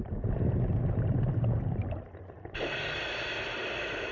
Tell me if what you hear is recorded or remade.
recorded